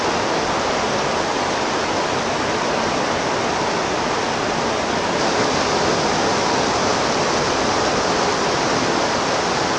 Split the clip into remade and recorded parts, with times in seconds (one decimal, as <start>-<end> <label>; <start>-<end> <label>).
0.0-9.8 recorded